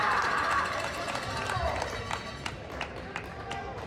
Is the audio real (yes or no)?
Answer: yes